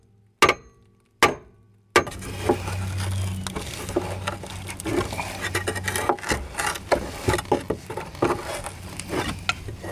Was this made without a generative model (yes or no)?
yes